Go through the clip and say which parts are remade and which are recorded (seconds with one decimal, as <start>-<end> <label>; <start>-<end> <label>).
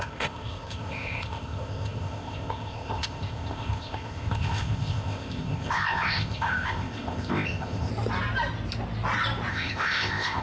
0.0-7.9 remade; 7.9-9.5 recorded; 9.5-10.4 remade